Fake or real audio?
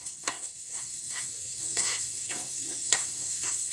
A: fake